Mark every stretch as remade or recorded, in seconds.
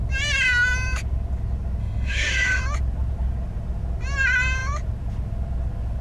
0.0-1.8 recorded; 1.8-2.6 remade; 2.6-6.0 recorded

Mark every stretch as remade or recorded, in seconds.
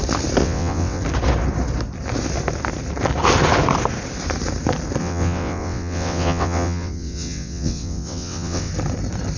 0.0-0.4 recorded; 0.4-1.0 remade; 1.0-5.0 recorded; 5.0-8.7 remade; 8.7-9.4 recorded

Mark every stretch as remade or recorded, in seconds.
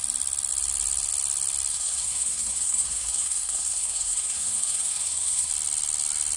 0.0-1.7 recorded; 1.7-5.5 remade; 5.5-6.4 recorded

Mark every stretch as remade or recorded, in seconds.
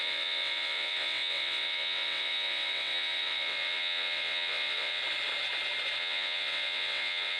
0.0-5.0 remade; 5.0-6.0 recorded; 6.0-7.4 remade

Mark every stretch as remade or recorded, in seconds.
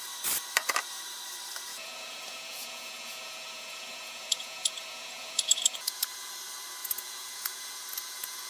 0.0-1.7 recorded; 1.7-6.3 remade; 6.3-6.8 recorded; 6.8-8.5 remade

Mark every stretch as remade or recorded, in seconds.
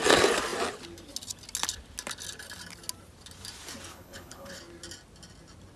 0.0-3.9 recorded; 3.9-4.6 remade; 4.6-5.8 recorded